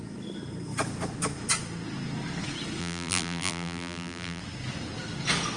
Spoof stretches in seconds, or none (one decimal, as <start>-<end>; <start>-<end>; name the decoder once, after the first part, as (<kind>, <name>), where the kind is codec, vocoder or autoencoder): 2.8-4.4 (vocoder, BigVGAN v2)